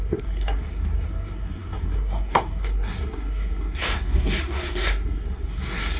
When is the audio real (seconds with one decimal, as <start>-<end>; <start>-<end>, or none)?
none